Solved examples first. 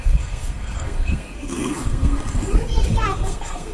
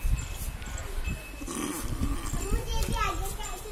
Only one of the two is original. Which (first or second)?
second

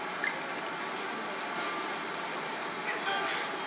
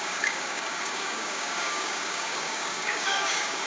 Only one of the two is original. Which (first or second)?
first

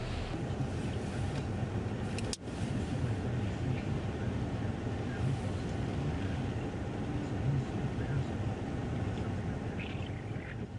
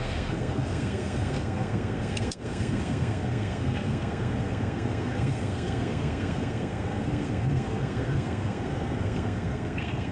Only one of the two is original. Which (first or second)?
first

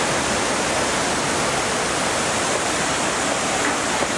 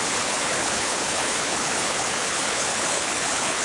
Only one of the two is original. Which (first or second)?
first